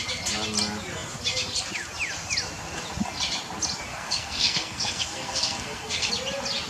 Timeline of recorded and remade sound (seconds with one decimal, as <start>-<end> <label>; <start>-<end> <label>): 0.0-3.9 recorded; 3.9-6.1 remade; 6.1-6.7 recorded